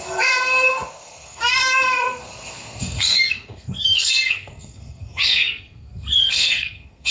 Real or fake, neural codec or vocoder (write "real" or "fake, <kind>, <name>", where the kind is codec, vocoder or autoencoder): fake, codec, SNAC